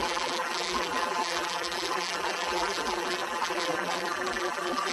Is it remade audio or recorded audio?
remade